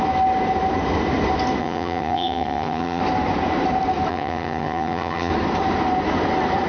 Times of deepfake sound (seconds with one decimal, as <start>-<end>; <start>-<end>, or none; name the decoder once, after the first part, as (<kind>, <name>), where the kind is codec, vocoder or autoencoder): 1.6-3.0 (vocoder, HiFi-GAN); 4.1-5.3